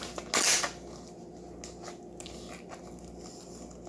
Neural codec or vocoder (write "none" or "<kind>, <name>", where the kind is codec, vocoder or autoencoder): none